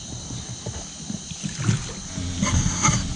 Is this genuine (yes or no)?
yes